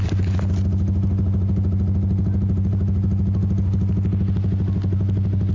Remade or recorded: recorded